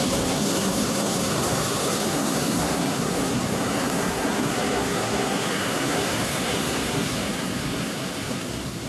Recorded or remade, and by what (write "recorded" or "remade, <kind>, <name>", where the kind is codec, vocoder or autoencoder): remade, codec, SNAC